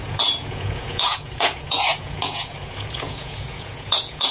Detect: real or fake fake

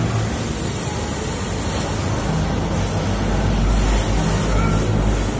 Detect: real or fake real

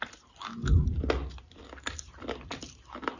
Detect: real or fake real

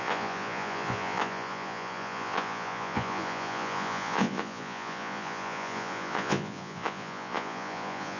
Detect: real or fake fake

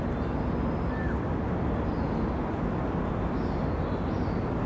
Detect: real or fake real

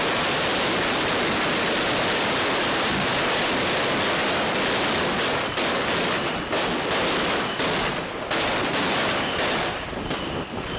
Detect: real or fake real